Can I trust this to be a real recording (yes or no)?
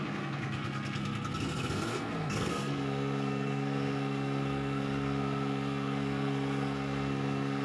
no